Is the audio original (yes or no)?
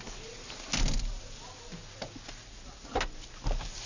yes